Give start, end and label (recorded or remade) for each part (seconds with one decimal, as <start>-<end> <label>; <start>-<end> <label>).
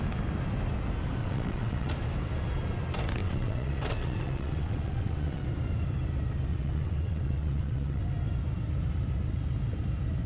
0.0-1.2 recorded; 1.2-1.9 remade; 1.9-3.2 recorded; 3.2-5.4 remade; 5.4-6.5 recorded; 6.5-8.0 remade; 8.0-10.3 recorded